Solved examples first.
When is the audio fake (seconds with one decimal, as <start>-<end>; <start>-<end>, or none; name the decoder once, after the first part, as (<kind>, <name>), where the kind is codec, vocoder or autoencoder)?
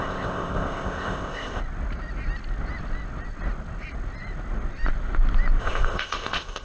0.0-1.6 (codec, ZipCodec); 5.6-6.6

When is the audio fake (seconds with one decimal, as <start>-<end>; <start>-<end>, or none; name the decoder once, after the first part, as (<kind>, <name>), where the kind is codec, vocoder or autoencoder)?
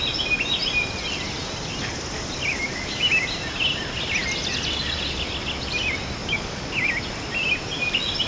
2.5-3.1 (codec, DAC); 6.2-6.9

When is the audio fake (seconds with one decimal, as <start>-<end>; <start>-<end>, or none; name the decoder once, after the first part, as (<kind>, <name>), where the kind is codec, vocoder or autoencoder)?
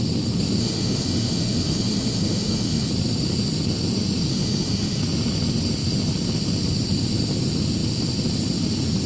0.6-2.9 (autoencoder, DAC-VAE); 4.3-5.0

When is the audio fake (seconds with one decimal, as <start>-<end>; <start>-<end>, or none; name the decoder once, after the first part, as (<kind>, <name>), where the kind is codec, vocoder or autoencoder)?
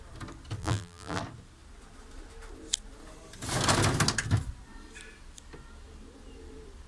0.6-1.2 (vocoder, BigVGAN v2)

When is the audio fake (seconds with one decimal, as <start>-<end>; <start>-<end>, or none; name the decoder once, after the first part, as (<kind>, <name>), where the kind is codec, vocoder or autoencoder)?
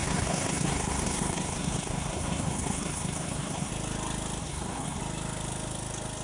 0.0-3.7 (codec, SNAC); 4.4-5.0